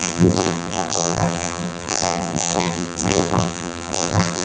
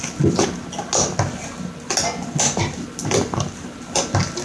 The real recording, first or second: second